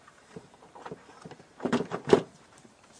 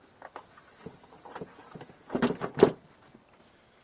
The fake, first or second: first